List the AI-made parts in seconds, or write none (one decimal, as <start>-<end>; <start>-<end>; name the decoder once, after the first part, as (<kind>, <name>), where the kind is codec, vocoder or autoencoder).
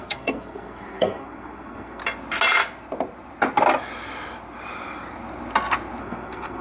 0.0-2.0 (codec, SNAC); 6.0-6.6